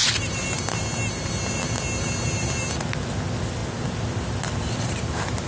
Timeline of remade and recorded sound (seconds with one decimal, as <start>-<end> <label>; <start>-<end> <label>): 0.0-5.5 recorded